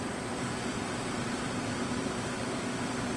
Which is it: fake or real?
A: real